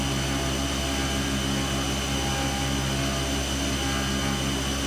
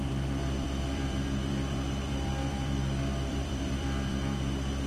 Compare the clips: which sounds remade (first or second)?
second